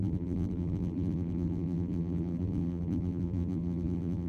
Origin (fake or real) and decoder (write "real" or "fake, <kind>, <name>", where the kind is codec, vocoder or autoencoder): fake, vocoder, BigVGAN v2